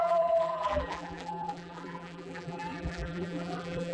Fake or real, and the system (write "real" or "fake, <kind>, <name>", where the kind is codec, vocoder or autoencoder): fake, vocoder, BigVGAN v2